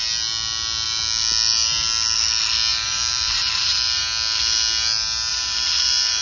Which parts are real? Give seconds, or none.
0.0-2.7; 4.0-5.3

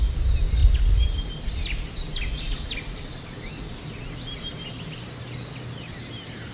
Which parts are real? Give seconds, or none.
0.0-6.5

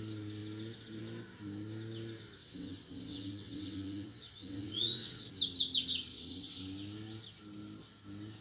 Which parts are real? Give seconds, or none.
0.0-2.4; 5.3-6.1; 6.6-8.4